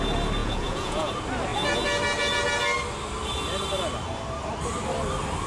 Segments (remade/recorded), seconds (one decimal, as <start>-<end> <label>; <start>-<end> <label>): 0.0-0.4 recorded; 0.4-1.1 remade; 1.1-5.5 recorded